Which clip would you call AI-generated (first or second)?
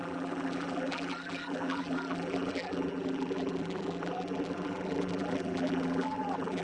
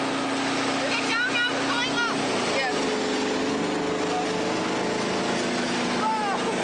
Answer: first